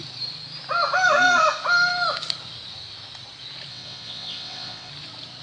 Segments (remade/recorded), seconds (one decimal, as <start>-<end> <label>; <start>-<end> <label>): 0.0-3.7 recorded; 3.7-4.9 remade; 4.9-5.4 recorded